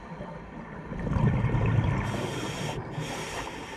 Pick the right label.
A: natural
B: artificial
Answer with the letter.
A